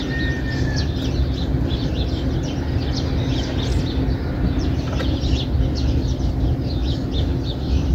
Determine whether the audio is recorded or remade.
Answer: recorded